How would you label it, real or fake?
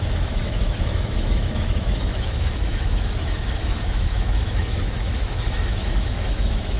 fake